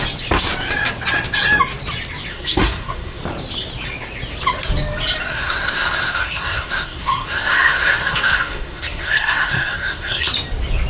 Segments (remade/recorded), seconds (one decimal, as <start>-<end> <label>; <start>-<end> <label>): 0.0-2.3 recorded; 2.3-3.2 remade; 3.2-5.3 recorded; 5.3-10.3 remade; 10.3-10.9 recorded